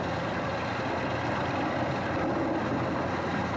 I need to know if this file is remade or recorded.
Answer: recorded